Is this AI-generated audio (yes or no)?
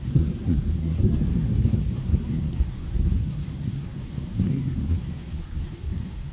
yes